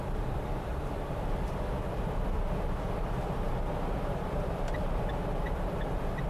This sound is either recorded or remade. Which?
remade